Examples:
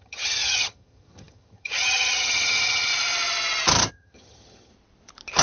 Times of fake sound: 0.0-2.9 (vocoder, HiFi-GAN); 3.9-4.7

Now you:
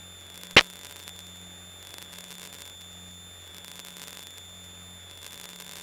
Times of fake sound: none

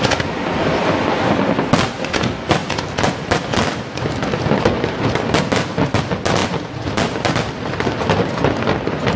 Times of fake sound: none

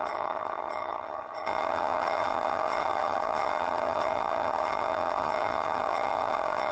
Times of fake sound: 0.0-6.7 (vocoder, HiFi-GAN)